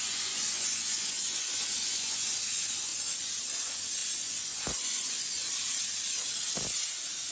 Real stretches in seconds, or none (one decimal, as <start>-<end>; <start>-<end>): 2.9-3.5; 5.4-7.3